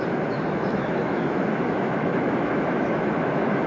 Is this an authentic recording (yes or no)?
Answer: no